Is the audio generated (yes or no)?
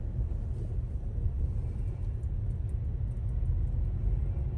no